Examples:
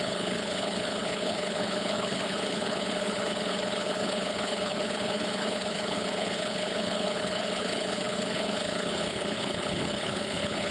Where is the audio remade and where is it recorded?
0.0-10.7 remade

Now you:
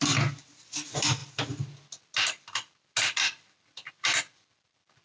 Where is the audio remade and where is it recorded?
0.0-5.0 recorded

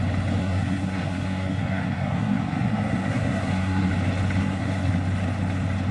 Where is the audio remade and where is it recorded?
0.0-0.4 recorded; 0.4-3.9 remade; 3.9-4.4 recorded; 4.4-4.9 remade; 4.9-5.9 recorded

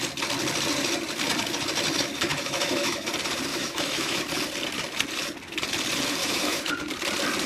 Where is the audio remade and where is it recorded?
0.0-2.3 recorded; 2.3-3.1 remade; 3.1-3.5 recorded; 3.5-4.2 remade; 4.2-6.2 recorded; 6.2-6.7 remade; 6.7-7.5 recorded

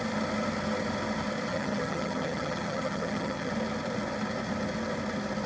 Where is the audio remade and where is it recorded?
0.0-1.5 recorded; 1.5-3.5 remade; 3.5-5.5 recorded

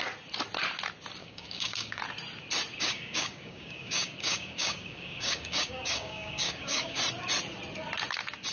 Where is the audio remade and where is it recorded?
0.0-1.2 recorded; 1.2-2.0 remade; 2.0-2.7 recorded; 2.7-7.0 remade; 7.0-8.5 recorded

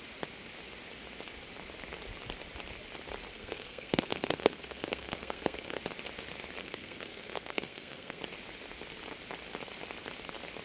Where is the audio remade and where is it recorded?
0.0-3.3 recorded; 3.3-5.8 remade; 5.8-6.6 recorded; 6.6-8.2 remade; 8.2-10.6 recorded